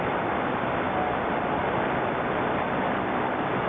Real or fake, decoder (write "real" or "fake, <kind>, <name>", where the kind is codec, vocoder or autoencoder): real